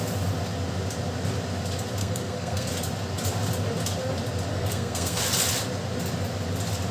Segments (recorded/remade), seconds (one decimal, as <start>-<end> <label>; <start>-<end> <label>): 0.0-2.0 recorded; 2.0-2.7 remade; 2.7-4.5 recorded; 4.5-5.2 remade; 5.2-6.9 recorded